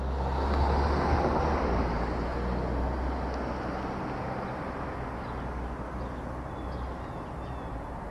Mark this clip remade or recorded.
recorded